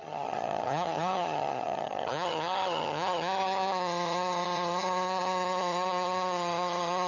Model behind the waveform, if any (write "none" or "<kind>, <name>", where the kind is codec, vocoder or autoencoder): vocoder, HiFi-GAN